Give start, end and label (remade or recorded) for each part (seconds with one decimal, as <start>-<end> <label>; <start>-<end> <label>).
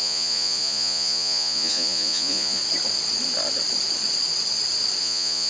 0.0-2.6 remade; 2.6-5.0 recorded; 5.0-5.5 remade